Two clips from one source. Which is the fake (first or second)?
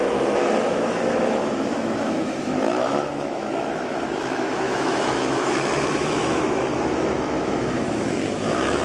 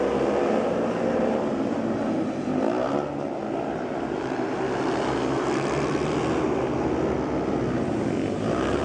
first